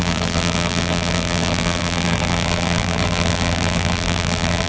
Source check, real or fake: fake